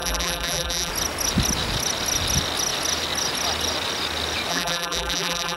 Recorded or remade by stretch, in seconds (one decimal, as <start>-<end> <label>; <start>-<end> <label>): 0.0-0.9 remade; 0.9-4.5 recorded; 4.5-5.6 remade